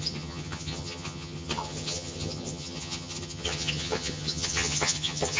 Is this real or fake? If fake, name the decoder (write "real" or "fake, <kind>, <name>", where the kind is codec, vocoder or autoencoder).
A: fake, vocoder, HiFi-GAN